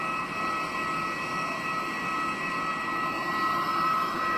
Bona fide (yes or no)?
yes